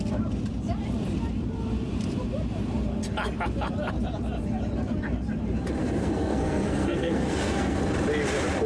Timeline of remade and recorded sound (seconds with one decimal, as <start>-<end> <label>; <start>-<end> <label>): 0.0-5.8 recorded; 5.8-7.8 remade; 7.8-8.7 recorded